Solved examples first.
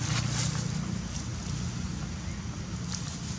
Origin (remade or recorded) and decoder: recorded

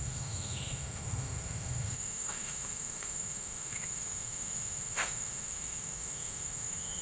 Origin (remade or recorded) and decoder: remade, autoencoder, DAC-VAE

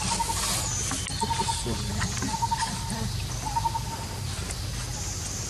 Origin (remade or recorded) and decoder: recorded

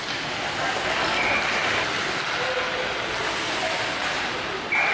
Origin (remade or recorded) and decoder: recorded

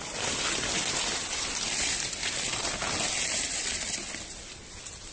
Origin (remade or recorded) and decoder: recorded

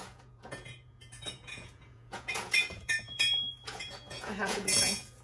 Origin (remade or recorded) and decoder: remade, vocoder, Vocos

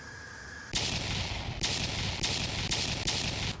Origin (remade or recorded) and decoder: recorded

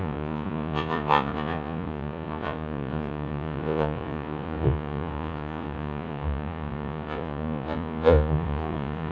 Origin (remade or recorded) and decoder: remade, vocoder, Vocos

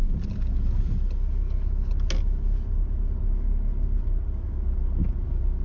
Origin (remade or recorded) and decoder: recorded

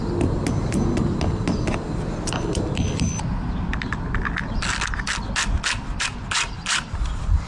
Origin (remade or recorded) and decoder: recorded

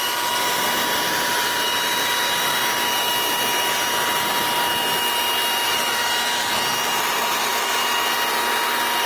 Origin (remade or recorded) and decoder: recorded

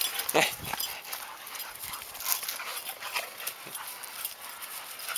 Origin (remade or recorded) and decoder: recorded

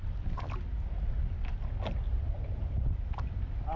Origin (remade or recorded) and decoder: recorded